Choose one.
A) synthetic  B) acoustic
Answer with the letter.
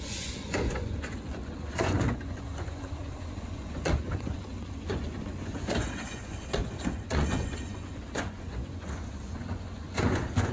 A